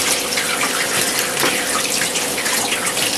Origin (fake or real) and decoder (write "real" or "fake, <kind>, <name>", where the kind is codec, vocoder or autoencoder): real